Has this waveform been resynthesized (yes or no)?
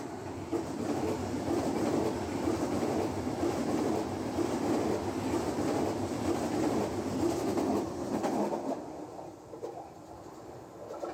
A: no